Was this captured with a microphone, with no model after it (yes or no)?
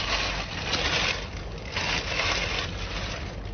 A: yes